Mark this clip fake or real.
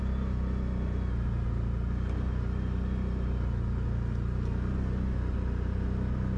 real